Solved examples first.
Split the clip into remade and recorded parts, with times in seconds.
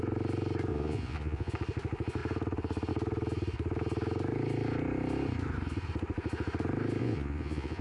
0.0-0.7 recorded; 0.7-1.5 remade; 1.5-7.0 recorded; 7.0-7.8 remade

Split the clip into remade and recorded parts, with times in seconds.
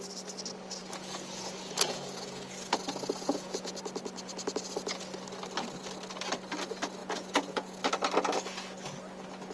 0.0-0.8 recorded; 0.8-3.7 remade; 3.7-7.0 recorded; 7.0-7.8 remade; 7.8-9.5 recorded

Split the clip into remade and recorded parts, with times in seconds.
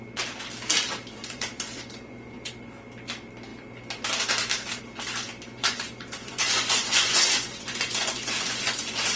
0.0-1.2 recorded; 1.2-2.5 remade; 2.5-5.6 recorded; 5.6-9.2 remade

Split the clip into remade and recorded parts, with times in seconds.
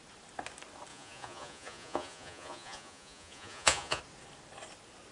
0.0-0.9 recorded; 0.9-4.0 remade; 4.0-5.1 recorded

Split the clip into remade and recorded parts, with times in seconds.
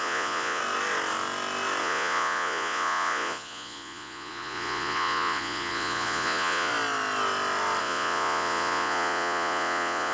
0.0-0.6 remade; 0.6-1.8 recorded; 1.8-6.7 remade; 6.7-7.8 recorded; 7.8-10.1 remade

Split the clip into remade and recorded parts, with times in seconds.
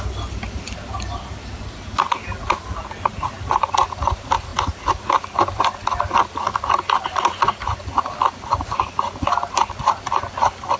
0.0-10.8 recorded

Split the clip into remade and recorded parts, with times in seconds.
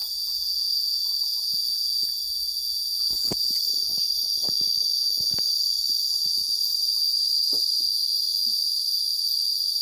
0.0-3.5 remade; 3.5-9.8 recorded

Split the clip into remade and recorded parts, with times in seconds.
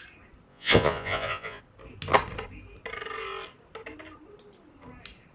0.0-0.5 recorded; 0.5-1.6 remade; 1.6-5.3 recorded